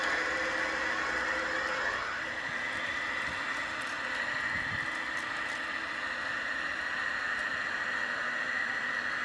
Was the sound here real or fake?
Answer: real